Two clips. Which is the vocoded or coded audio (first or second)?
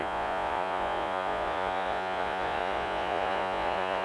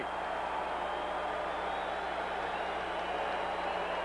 first